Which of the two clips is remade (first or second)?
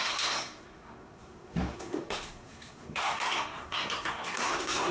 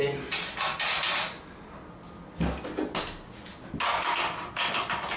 first